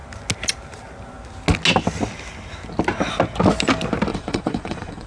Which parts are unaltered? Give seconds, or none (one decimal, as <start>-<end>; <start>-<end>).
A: 0.0-4.1